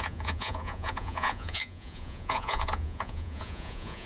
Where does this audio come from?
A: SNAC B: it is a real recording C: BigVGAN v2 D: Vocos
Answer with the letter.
D